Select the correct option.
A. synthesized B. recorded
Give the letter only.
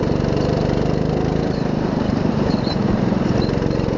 A